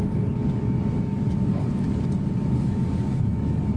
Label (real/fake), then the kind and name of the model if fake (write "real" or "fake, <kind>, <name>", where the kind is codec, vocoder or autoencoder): fake, codec, DAC